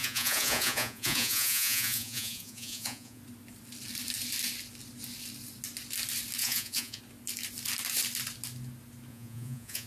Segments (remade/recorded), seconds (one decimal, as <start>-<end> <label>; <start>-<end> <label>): 0.0-3.2 remade; 3.2-6.4 recorded; 6.4-7.0 remade; 7.0-9.1 recorded; 9.1-9.9 remade